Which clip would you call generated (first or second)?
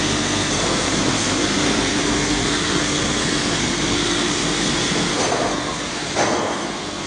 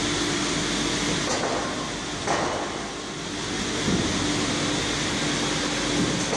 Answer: first